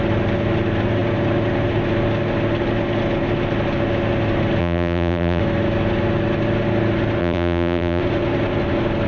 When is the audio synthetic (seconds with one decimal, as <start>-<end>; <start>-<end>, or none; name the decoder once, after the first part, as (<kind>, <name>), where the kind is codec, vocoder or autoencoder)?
4.6-5.4 (vocoder, BigVGAN v2); 7.2-8.0